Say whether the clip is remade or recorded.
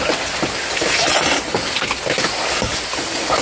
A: recorded